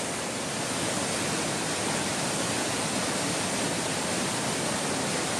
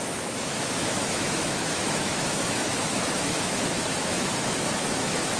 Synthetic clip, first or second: second